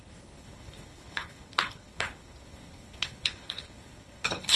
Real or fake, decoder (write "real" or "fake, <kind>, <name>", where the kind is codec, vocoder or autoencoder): fake, codec, HILCodec